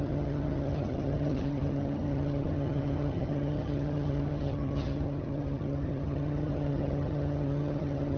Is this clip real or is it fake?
fake